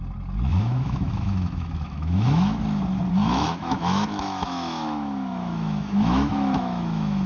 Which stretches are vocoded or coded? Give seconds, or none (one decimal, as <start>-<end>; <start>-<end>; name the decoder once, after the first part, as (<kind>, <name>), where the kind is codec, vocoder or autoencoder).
0.5-2.6 (autoencoder, DAC-VAE); 3.2-7.3